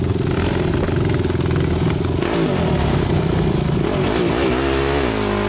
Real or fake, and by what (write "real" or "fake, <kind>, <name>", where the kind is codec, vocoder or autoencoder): real